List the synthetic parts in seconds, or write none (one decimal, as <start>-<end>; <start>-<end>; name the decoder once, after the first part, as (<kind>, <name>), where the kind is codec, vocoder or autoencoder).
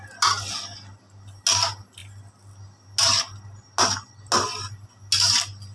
none